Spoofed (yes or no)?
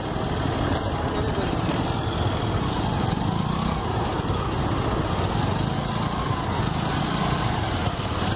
no